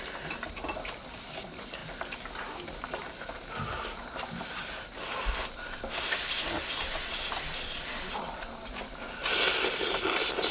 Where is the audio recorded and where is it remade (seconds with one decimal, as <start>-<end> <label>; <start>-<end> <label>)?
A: 0.0-10.5 recorded